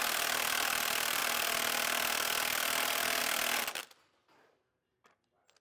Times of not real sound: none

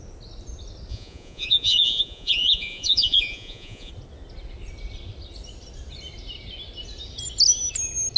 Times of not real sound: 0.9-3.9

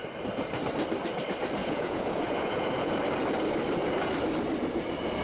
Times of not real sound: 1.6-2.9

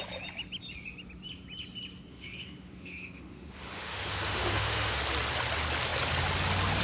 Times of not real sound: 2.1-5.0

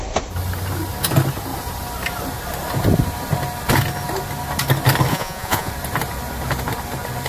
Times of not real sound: 5.1-5.7

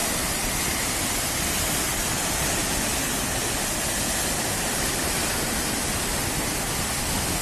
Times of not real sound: none